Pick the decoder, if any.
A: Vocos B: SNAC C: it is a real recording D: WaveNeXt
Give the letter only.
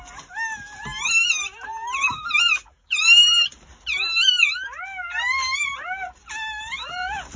C